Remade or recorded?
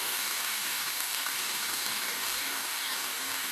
remade